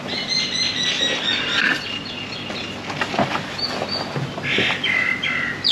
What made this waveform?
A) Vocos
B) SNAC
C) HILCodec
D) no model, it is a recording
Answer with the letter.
D